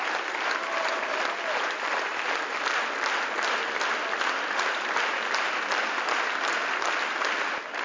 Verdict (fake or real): real